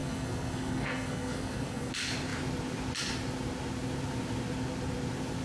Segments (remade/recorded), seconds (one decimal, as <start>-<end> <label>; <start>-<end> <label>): 0.0-1.9 remade; 1.9-5.4 recorded

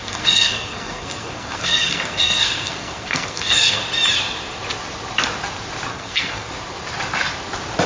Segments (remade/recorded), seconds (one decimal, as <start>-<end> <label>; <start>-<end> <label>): 0.0-3.8 remade; 3.8-5.9 recorded; 5.9-6.5 remade; 6.5-7.9 recorded